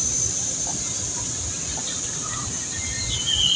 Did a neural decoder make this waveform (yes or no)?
no